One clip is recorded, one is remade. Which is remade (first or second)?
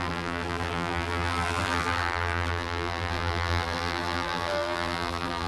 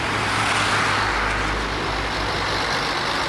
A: first